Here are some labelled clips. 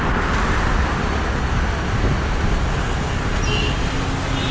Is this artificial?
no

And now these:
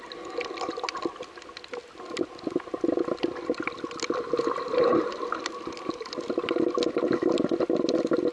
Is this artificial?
no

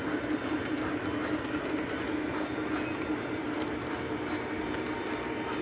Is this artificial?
no